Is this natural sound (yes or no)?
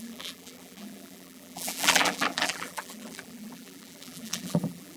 no